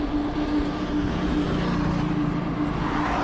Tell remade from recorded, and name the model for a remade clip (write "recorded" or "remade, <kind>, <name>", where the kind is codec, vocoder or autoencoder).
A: recorded